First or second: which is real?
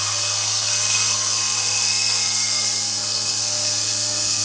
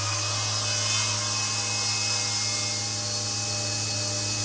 second